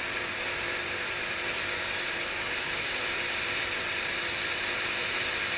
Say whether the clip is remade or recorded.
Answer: remade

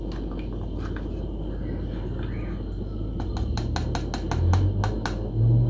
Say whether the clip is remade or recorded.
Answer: recorded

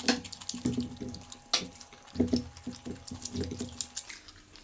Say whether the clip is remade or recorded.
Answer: recorded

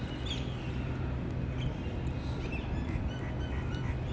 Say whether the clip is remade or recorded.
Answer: recorded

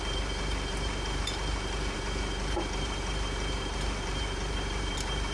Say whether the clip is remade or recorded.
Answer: remade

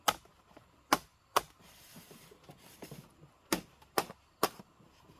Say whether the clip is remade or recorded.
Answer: recorded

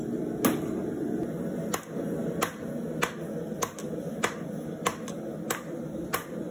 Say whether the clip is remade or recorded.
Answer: recorded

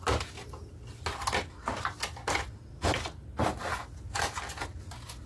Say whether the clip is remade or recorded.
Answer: recorded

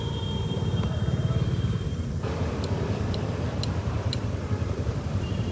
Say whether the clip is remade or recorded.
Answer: remade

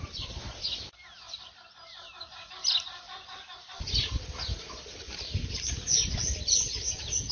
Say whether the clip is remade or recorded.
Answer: recorded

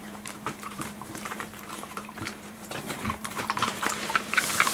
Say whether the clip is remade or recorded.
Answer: remade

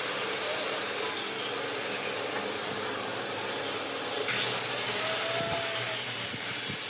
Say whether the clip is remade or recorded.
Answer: recorded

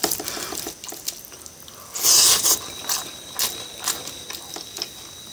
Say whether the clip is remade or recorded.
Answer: recorded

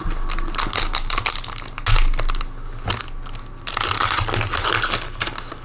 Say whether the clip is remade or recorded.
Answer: recorded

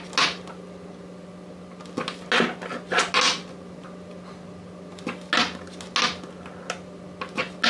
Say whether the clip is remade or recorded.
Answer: recorded